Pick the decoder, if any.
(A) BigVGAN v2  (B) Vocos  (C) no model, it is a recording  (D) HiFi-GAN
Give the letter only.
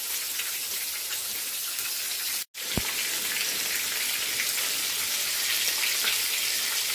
C